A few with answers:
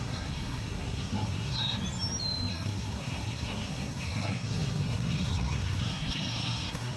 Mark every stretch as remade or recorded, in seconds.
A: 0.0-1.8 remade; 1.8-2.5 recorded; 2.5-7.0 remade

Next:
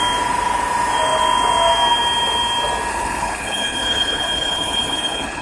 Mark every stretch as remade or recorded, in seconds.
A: 0.0-2.9 recorded; 2.9-5.4 remade

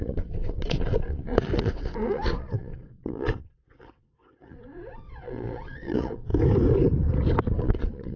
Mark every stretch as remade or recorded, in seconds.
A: 0.0-6.3 remade; 6.3-7.6 recorded; 7.6-8.2 remade

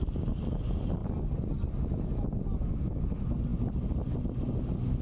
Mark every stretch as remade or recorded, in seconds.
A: 0.0-5.0 recorded

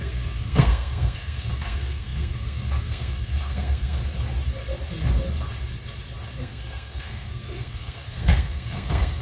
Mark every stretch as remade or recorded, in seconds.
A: 0.0-4.0 remade; 4.0-6.4 recorded; 6.4-9.2 remade

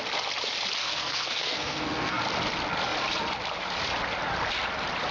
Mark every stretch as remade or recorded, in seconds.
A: 0.0-0.8 recorded; 0.8-2.2 remade; 2.2-5.1 recorded

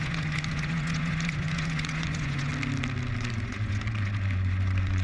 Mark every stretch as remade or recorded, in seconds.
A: 0.0-2.5 remade; 2.5-3.2 recorded; 3.2-5.0 remade

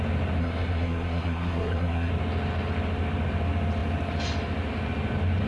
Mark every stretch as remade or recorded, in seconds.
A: 0.0-0.4 recorded; 0.4-2.1 remade; 2.1-5.5 recorded